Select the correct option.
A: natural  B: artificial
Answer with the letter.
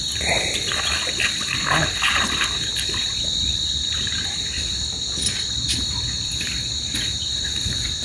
A